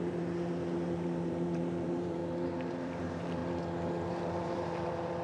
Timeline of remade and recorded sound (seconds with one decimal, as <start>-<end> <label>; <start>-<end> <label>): 0.0-2.2 remade; 2.2-3.0 recorded; 3.0-3.4 remade; 3.4-4.1 recorded; 4.1-5.2 remade